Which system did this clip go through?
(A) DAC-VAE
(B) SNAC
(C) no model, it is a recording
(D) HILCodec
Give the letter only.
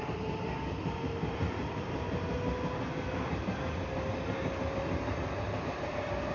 C